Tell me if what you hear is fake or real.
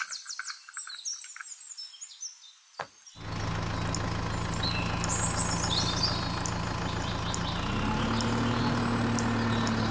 real